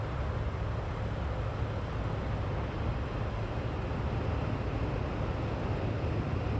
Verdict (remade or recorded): recorded